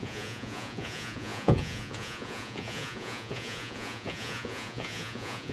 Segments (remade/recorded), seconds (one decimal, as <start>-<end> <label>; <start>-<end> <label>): 0.0-5.5 remade